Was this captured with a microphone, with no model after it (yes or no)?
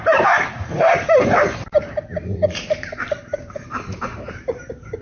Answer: no